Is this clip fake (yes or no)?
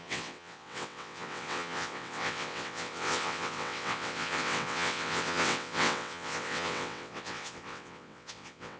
yes